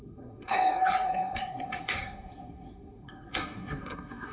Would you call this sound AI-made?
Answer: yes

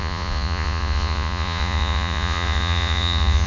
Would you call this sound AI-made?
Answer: yes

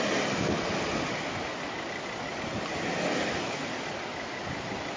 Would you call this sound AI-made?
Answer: yes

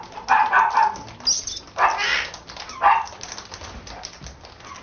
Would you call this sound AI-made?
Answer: no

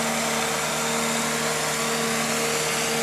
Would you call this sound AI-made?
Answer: no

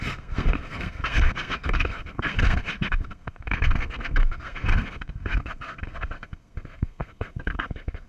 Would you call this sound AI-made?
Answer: yes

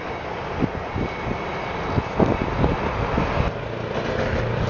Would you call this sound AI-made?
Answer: no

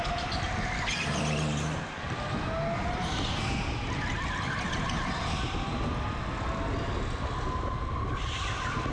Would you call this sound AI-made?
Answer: no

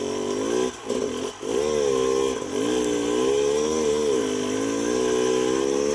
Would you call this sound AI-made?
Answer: no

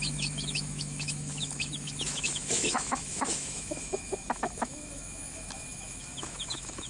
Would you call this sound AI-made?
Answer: yes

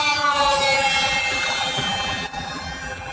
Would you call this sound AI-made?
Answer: yes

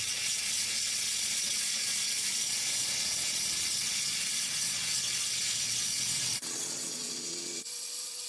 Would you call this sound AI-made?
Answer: yes